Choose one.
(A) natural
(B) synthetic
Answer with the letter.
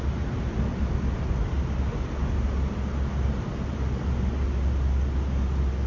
A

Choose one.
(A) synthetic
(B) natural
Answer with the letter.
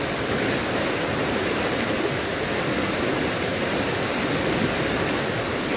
B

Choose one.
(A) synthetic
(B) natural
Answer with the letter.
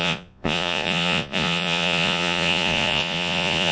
A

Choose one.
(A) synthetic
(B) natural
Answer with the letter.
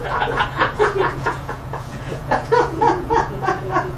A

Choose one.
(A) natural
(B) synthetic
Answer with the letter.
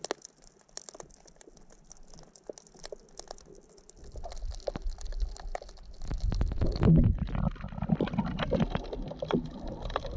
A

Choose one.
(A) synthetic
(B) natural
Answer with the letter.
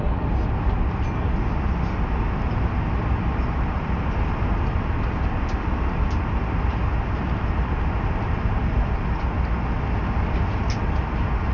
B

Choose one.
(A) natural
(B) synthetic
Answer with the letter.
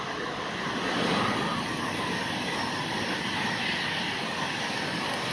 A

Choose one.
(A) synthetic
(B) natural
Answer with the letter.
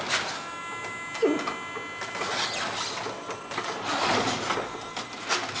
B